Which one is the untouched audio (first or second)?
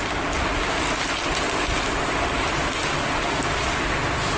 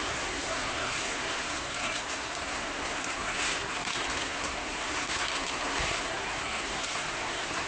first